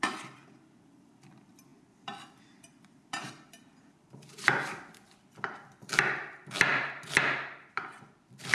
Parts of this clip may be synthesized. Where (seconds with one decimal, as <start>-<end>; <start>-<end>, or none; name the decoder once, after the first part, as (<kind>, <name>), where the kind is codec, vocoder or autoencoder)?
0.0-8.5 (vocoder, BigVGAN v2)